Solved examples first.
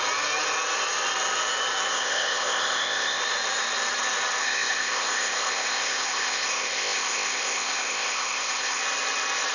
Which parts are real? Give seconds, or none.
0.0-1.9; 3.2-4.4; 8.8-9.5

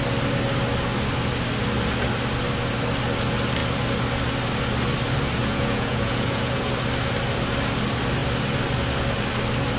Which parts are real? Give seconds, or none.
0.0-5.4; 6.7-9.8

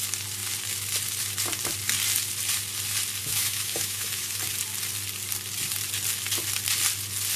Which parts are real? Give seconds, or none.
0.0-3.2; 4.4-7.4